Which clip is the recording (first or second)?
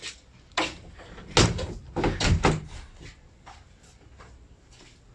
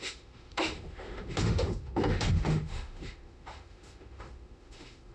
first